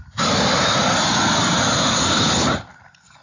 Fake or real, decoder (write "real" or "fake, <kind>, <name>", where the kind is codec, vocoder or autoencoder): real